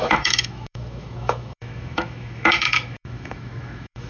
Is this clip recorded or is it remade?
remade